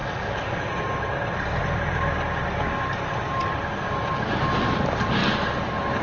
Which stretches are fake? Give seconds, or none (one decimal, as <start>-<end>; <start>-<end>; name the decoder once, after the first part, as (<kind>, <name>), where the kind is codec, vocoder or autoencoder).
none